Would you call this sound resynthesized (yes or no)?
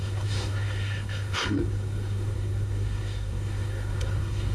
yes